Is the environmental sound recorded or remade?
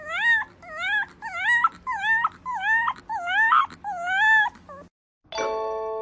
recorded